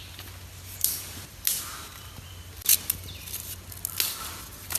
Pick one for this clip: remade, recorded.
recorded